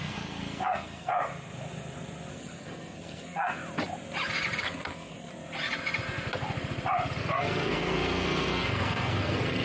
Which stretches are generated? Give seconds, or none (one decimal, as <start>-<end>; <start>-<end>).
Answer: 0.0-1.3; 2.3-3.6; 4.6-5.3; 7.2-9.6